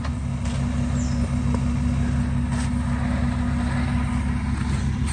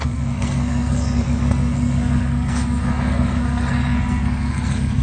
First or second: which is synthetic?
second